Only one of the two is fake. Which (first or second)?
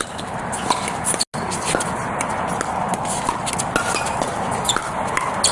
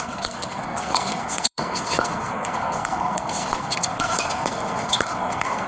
second